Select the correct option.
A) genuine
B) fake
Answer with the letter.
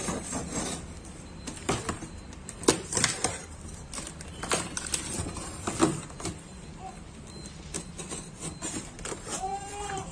B